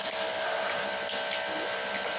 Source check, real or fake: real